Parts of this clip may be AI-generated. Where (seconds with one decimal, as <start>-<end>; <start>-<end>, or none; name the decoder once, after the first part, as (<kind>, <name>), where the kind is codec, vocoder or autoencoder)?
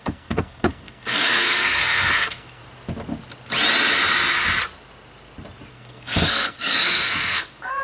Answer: 0.0-2.6 (codec, SNAC); 5.7-7.8